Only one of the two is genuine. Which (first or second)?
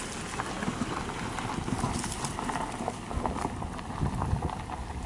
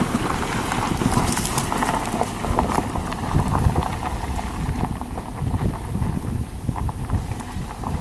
first